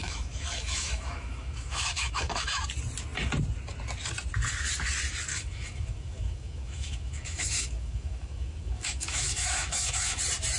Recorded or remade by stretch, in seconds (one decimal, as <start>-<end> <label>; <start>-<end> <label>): 0.0-2.6 remade; 2.6-5.3 recorded; 5.3-10.2 remade; 10.2-10.6 recorded